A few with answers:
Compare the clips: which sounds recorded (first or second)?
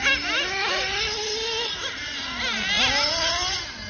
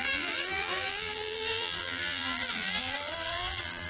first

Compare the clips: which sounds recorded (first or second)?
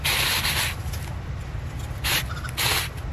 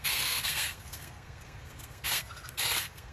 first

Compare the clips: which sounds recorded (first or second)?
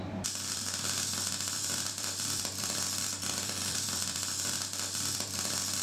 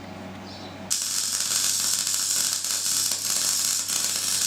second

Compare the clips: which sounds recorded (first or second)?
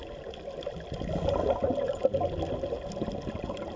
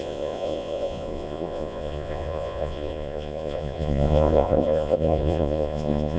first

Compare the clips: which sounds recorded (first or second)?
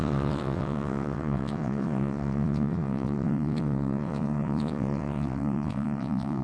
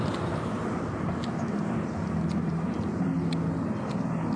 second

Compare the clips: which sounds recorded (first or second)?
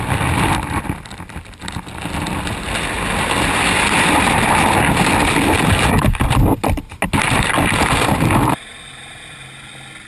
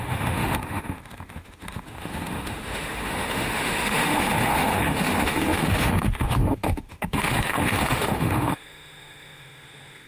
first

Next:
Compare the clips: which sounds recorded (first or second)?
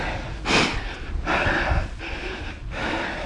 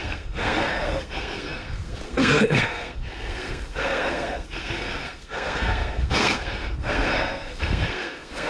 first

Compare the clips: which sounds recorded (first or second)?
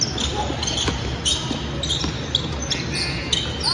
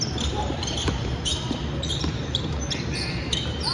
first